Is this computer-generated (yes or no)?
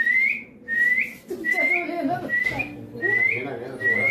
no